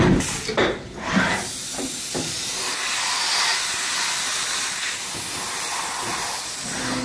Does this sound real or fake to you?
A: real